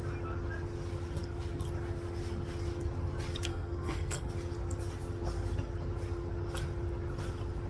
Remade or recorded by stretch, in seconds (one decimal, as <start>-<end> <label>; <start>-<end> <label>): 0.0-3.5 recorded; 3.5-4.3 remade; 4.3-7.7 recorded